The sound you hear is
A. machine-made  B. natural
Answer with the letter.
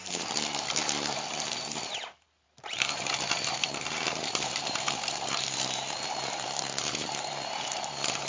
A